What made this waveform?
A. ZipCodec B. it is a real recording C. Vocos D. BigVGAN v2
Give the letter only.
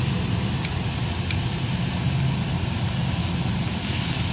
B